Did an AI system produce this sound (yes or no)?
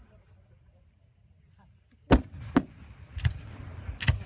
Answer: no